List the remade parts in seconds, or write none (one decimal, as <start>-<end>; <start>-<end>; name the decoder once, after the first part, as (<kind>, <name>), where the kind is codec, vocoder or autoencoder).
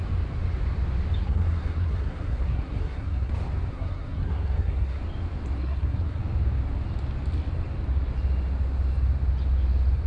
1.2-3.3 (codec, SNAC); 3.7-5.0; 5.6-6.2